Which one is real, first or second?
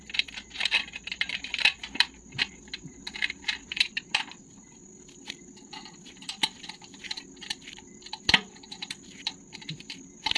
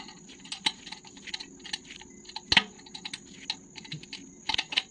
second